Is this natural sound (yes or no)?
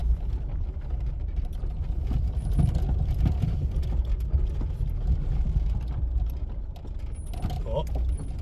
yes